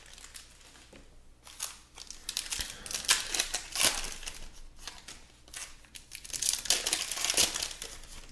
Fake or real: real